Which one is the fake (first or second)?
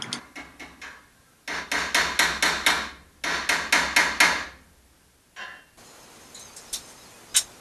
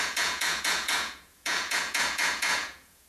second